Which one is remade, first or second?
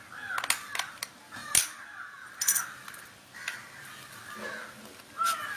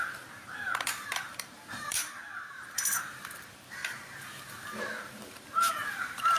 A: second